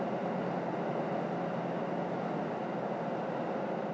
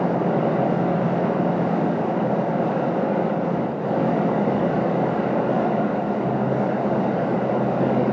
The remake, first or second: second